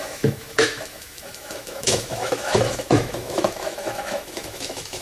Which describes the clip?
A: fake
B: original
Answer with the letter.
A